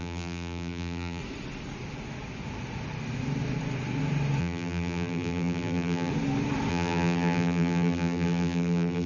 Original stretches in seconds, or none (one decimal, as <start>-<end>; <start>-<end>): 1.2-4.4; 6.1-6.7